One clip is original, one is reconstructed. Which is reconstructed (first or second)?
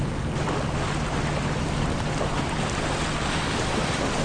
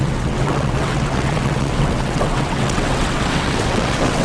second